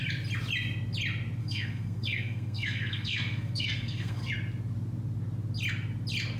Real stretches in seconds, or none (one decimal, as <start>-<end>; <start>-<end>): 0.0-1.4; 4.3-6.4